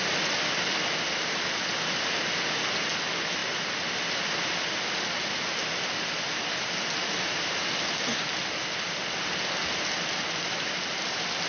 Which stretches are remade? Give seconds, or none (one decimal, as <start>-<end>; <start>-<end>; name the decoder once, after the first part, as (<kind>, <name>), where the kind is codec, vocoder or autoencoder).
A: none